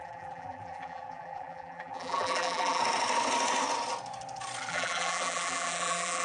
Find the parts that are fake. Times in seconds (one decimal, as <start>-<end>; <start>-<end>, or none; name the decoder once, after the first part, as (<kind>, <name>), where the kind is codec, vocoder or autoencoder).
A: 0.0-2.8 (vocoder, BigVGAN v2); 4.7-6.2